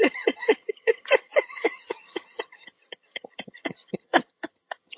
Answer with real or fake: fake